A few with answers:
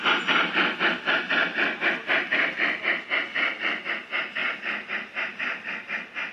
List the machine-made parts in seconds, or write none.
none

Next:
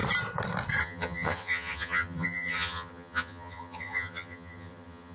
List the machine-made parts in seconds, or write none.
0.8-5.1 (vocoder, HiFi-GAN)

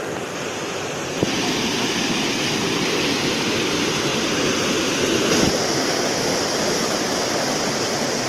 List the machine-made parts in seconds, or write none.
none

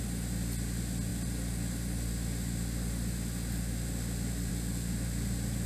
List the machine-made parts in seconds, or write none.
none

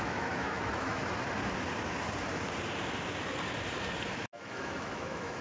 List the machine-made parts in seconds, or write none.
0.0-1.0 (autoencoder, DAC-VAE); 4.2-5.4

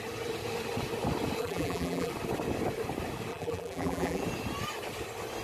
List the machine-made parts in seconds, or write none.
1.4-2.1 (vocoder, BigVGAN v2); 3.3-4.2

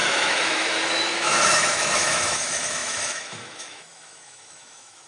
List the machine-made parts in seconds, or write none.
0.0-5.1 (autoencoder, DAC-VAE)